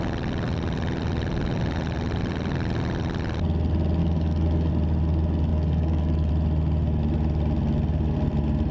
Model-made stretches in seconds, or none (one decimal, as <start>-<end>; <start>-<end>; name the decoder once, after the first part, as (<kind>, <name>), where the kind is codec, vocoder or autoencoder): 4.0-4.7 (codec, DAC); 5.5-6.3